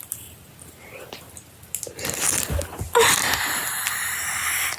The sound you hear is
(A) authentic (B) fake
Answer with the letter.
A